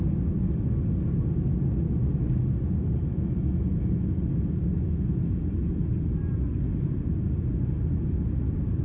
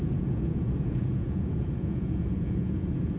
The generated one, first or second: second